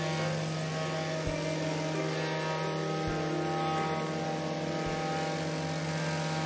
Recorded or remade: recorded